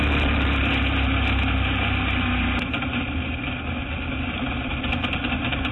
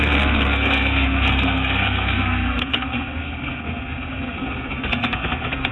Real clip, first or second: first